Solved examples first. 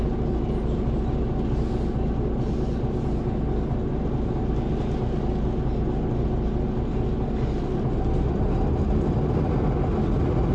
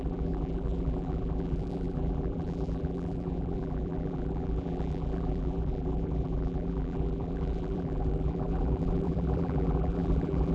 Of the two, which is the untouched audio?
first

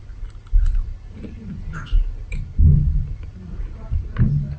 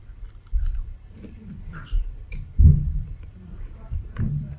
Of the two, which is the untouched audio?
first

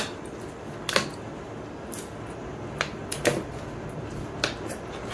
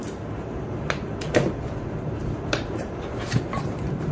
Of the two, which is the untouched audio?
first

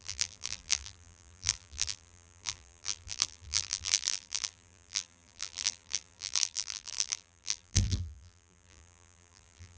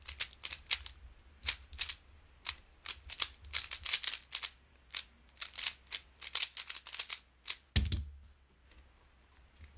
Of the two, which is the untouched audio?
second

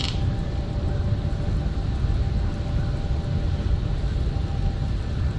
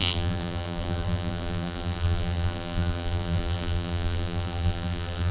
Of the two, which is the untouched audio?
first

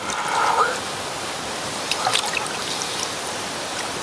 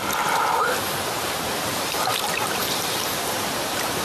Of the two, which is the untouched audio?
first